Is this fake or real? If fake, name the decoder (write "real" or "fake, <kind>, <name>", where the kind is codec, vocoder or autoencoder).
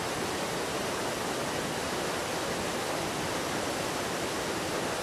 real